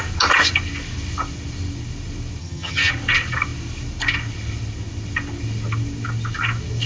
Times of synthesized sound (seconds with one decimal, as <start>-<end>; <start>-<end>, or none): 2.4-2.9